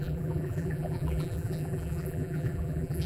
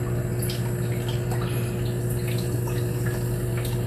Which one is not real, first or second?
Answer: first